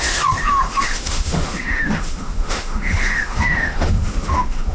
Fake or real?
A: fake